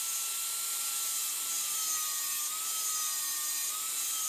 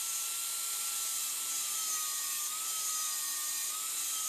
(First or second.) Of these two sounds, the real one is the first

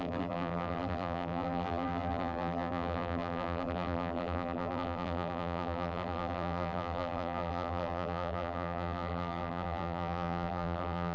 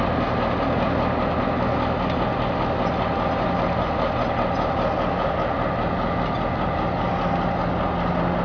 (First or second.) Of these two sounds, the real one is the second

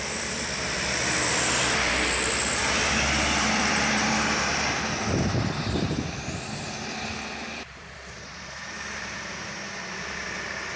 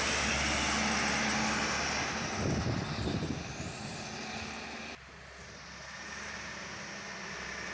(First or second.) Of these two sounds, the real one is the second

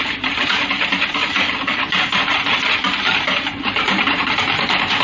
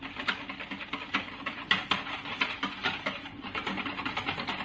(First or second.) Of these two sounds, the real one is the second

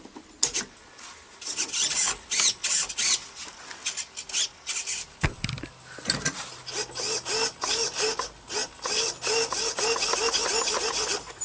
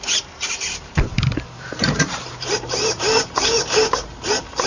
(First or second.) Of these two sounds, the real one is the first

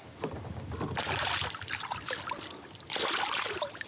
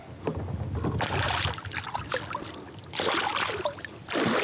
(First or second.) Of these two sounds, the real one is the second